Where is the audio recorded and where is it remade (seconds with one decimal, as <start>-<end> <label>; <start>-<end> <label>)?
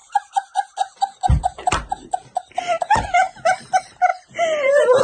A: 0.0-1.4 recorded; 1.4-4.1 remade; 4.1-5.0 recorded